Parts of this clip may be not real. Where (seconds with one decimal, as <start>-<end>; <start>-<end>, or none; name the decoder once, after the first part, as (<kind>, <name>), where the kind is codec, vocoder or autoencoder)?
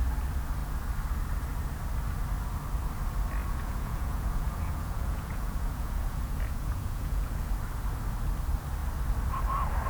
3.4-7.5 (vocoder, Vocos)